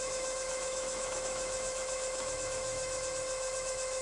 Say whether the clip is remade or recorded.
remade